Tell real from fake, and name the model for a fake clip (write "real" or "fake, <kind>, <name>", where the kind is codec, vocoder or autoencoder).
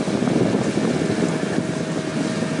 real